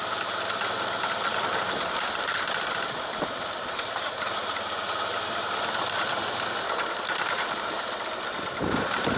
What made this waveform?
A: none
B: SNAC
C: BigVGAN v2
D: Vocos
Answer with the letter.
A